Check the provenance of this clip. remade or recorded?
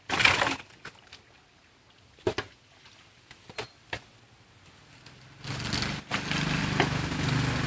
recorded